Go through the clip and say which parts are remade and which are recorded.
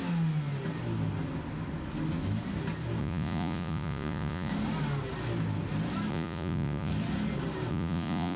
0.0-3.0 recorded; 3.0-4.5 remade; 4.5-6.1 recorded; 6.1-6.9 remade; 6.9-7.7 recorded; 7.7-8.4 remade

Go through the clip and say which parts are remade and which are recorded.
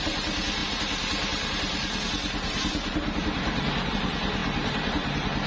0.0-5.5 remade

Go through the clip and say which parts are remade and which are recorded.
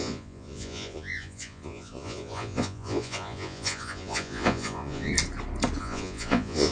0.0-5.1 remade; 5.1-5.8 recorded; 5.8-6.7 remade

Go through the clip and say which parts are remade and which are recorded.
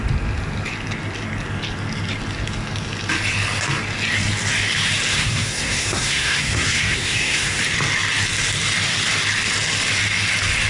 0.0-5.1 recorded; 5.1-7.6 remade; 7.6-10.7 recorded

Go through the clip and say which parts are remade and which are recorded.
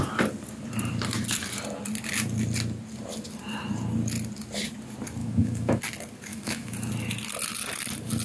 0.0-5.2 recorded; 5.2-5.8 remade; 5.8-6.3 recorded; 6.3-6.9 remade; 6.9-8.2 recorded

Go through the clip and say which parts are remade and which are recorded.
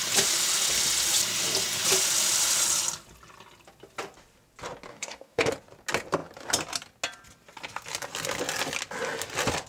0.0-4.9 recorded; 4.9-5.5 remade; 5.5-9.7 recorded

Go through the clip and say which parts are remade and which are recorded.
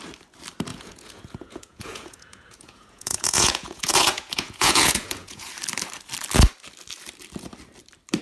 0.0-0.7 recorded; 0.7-5.5 remade; 5.5-8.2 recorded